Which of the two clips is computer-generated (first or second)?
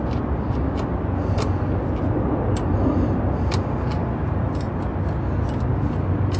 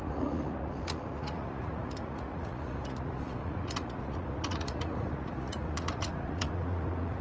second